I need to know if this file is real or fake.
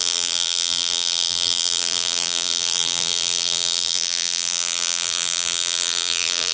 fake